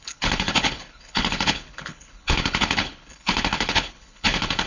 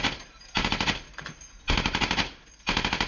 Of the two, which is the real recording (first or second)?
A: second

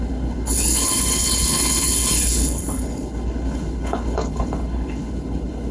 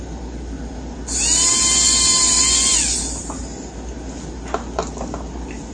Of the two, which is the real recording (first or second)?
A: second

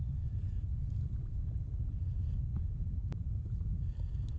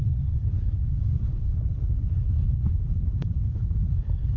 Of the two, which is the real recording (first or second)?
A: first